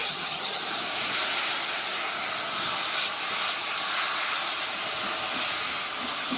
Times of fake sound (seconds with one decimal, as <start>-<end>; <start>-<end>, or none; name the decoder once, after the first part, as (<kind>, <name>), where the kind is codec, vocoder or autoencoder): 0.0-0.6 (vocoder, HiFi-GAN)